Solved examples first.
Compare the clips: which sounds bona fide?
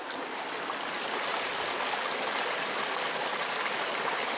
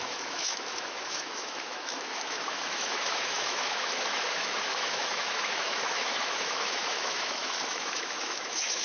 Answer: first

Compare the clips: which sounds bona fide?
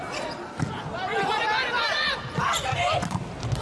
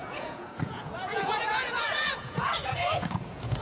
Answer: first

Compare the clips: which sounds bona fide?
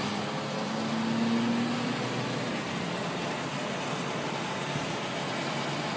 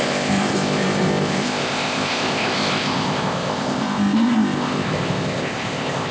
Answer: first